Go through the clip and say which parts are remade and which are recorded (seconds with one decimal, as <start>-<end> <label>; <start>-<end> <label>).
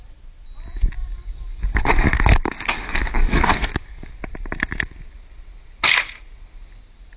0.0-1.0 recorded; 1.0-4.1 remade; 4.1-7.2 recorded